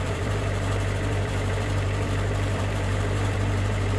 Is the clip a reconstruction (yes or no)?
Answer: yes